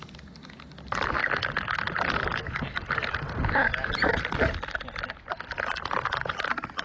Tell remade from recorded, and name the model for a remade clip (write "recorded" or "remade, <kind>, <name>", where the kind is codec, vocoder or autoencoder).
recorded